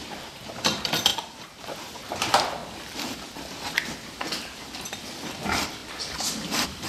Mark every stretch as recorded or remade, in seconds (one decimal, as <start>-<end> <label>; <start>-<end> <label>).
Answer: 0.0-2.6 remade; 2.6-4.2 recorded; 4.2-6.9 remade

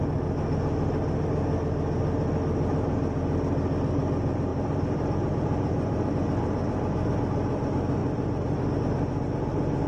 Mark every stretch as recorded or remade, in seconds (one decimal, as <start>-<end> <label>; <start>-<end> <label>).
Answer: 0.0-4.5 recorded; 4.5-6.1 remade; 6.1-9.9 recorded

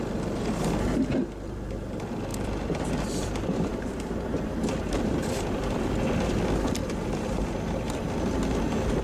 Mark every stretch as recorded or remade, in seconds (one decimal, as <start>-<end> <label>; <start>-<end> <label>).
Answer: 0.0-2.3 recorded; 2.3-2.9 remade; 2.9-9.0 recorded

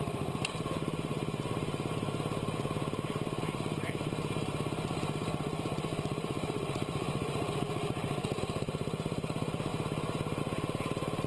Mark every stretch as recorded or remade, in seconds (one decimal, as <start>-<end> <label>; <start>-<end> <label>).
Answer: 0.0-5.9 recorded; 5.9-8.4 remade; 8.4-11.3 recorded

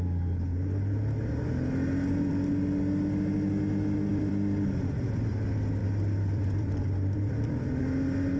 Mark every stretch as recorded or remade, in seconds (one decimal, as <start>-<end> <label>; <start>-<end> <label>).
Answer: 0.0-4.1 recorded; 4.1-5.3 remade; 5.3-5.8 recorded; 5.8-7.8 remade; 7.8-8.4 recorded

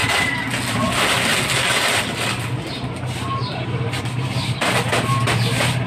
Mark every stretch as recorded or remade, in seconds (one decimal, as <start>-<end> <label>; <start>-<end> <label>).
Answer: 0.0-0.9 remade; 0.9-1.3 recorded; 1.3-4.0 remade; 4.0-5.9 recorded

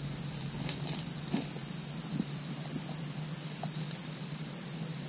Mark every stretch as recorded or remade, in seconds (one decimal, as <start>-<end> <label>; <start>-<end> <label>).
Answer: 0.0-5.1 recorded